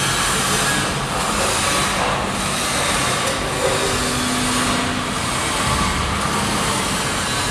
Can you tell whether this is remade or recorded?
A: recorded